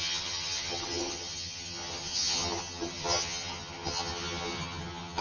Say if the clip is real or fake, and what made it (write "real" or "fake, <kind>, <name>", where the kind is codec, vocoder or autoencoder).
fake, vocoder, HiFi-GAN